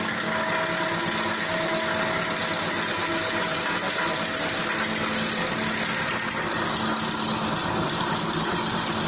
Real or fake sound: real